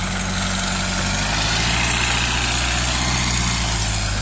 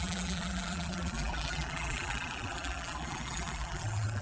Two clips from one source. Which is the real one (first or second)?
first